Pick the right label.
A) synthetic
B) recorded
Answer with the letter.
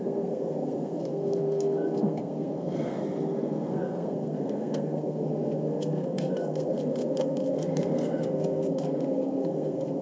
A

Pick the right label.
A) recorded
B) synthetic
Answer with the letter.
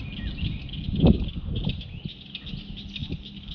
A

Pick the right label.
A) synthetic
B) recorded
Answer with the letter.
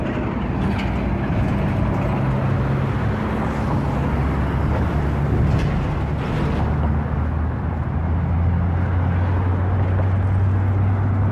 B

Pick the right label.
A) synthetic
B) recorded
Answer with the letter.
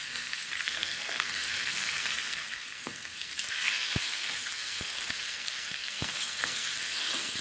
A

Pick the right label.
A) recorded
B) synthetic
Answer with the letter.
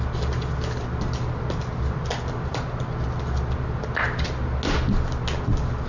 A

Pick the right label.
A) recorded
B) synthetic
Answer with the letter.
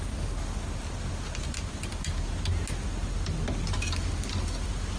A